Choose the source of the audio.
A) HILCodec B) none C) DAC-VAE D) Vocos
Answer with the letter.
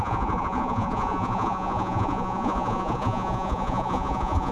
D